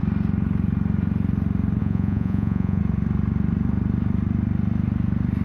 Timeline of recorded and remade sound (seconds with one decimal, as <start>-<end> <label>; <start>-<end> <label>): 0.0-1.8 recorded; 1.8-2.8 remade; 2.8-5.4 recorded